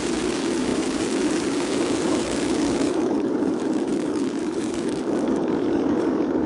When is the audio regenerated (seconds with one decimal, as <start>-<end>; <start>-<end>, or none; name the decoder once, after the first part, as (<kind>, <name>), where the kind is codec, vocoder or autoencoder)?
0.0-6.5 (codec, DAC)